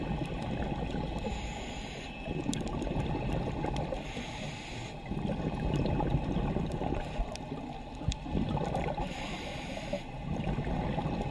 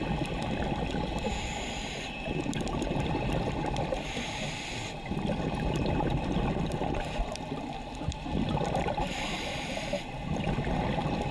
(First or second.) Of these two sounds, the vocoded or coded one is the second